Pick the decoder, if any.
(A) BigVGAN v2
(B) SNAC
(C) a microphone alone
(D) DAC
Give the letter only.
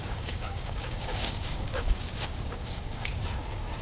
D